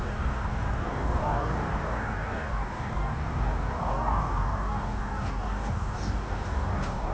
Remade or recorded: remade